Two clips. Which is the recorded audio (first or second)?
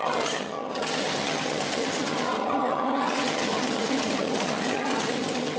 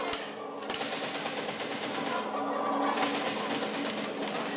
second